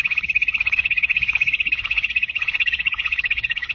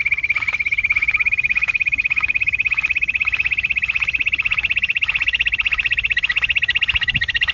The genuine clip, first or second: second